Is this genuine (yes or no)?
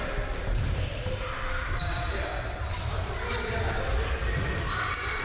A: yes